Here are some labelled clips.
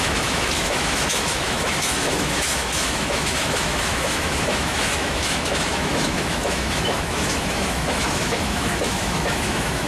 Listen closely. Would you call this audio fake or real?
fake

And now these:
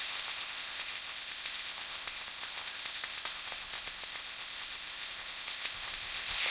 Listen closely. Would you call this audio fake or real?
fake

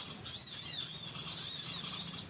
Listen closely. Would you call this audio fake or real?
real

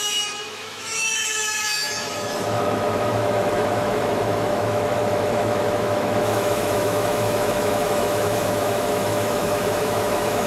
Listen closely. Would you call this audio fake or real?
fake